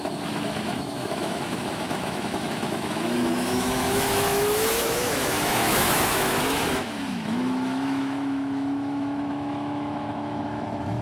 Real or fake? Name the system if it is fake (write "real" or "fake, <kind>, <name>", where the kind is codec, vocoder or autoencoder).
fake, autoencoder, DAC-VAE